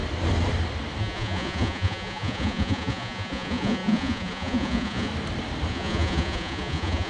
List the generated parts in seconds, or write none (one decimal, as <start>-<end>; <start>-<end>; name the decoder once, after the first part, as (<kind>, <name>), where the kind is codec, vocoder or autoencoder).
1.0-5.1 (vocoder, Vocos); 5.7-7.1